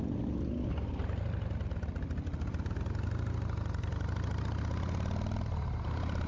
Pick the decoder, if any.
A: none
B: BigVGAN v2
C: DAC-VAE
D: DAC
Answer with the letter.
A